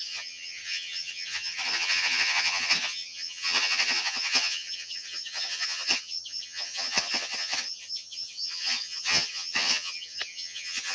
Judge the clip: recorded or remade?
remade